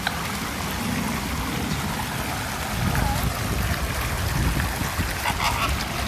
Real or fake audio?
real